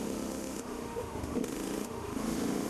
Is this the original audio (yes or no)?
no